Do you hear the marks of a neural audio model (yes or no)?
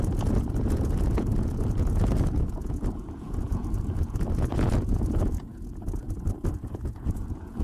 yes